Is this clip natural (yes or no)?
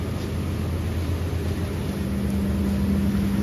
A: yes